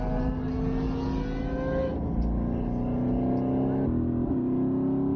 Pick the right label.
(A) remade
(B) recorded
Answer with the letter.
B